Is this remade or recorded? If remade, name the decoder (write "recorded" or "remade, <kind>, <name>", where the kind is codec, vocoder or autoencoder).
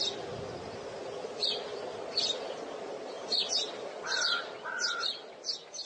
recorded